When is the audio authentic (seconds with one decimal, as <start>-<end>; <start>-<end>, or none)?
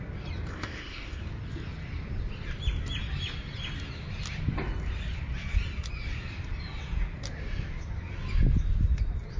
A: 0.0-0.5; 1.2-9.4